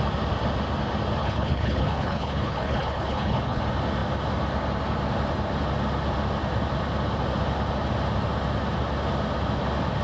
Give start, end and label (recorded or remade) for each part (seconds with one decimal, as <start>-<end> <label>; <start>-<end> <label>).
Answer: 0.0-1.2 recorded; 1.2-3.6 remade; 3.6-10.0 recorded